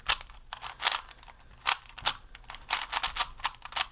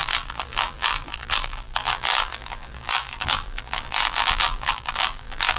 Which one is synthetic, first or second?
second